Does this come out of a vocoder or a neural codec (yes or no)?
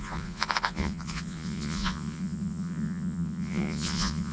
yes